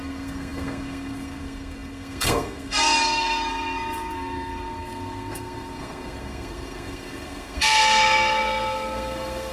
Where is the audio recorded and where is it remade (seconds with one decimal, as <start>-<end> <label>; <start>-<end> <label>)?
0.0-9.5 remade